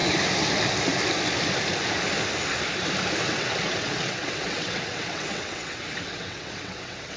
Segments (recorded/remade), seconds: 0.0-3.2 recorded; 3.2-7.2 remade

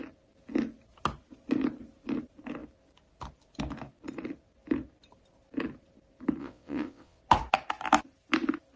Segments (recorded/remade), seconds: 0.0-6.4 recorded; 6.4-7.2 remade; 7.2-8.8 recorded

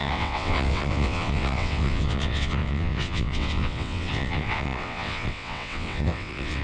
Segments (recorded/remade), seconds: 0.0-6.6 remade

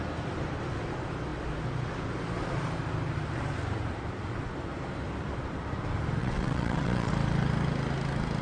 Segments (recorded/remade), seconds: 0.0-6.2 recorded; 6.2-7.1 remade; 7.1-8.4 recorded